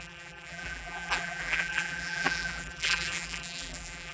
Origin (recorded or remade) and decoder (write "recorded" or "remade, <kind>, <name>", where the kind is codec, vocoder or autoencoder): remade, vocoder, BigVGAN v2